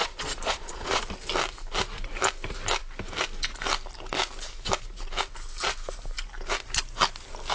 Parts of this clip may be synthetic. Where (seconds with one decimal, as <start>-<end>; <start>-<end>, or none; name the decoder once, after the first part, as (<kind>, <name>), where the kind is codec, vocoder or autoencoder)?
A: 0.0-1.0 (vocoder, Vocos)